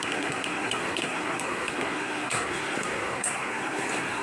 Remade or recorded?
remade